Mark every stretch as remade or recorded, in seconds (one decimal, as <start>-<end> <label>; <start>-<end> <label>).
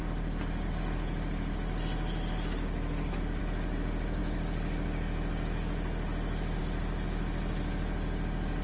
0.0-8.6 recorded